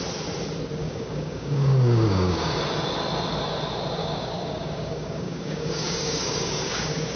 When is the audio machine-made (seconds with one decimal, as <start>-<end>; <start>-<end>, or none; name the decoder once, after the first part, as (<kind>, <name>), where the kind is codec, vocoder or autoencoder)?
0.8-2.6 (codec, DAC); 4.0-7.2